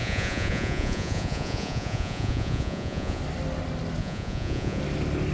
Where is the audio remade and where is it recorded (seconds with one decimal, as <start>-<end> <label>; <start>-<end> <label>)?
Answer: 0.0-3.2 remade; 3.2-4.0 recorded; 4.0-4.8 remade; 4.8-5.3 recorded